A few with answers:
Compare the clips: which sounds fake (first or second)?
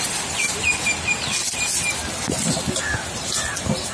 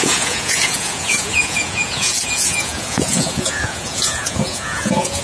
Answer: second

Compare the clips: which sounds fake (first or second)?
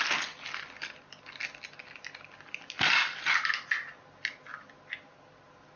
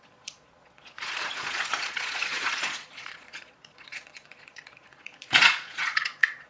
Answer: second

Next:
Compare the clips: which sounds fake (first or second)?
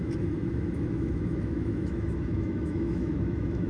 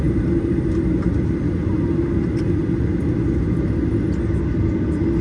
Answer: first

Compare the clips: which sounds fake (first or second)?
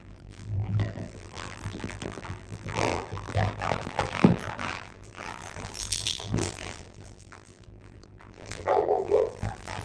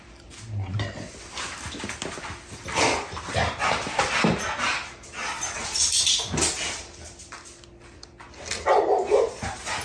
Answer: first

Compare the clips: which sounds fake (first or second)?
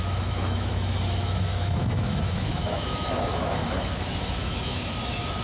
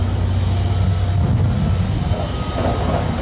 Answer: first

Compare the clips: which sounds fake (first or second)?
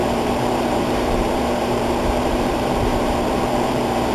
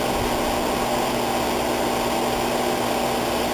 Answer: first